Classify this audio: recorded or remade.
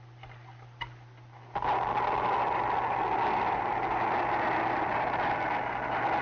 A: recorded